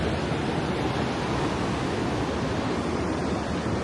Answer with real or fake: real